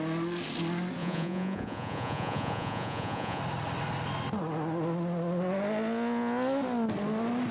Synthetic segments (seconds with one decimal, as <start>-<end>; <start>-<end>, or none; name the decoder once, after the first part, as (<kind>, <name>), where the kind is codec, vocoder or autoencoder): 1.0-3.4 (vocoder, Vocos)